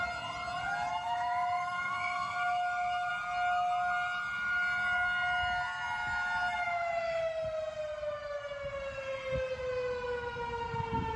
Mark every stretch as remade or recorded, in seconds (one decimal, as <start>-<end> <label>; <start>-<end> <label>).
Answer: 0.0-0.9 recorded; 0.9-3.1 remade; 3.1-6.6 recorded; 6.6-7.2 remade; 7.2-11.2 recorded